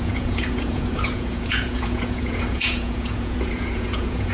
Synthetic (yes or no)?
yes